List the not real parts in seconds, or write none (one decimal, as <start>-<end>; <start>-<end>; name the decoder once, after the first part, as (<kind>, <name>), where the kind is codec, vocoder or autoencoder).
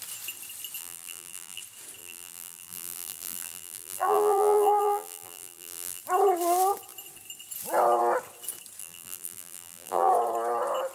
0.8-1.6 (vocoder, BigVGAN v2); 2.0-6.0; 8.8-10.1